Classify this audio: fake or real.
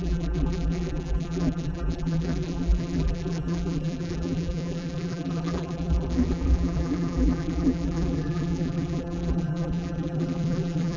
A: fake